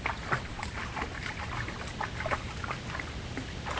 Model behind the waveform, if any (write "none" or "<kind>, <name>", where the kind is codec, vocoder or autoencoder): none